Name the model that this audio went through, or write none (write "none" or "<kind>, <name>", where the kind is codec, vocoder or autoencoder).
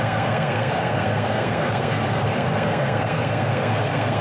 codec, SNAC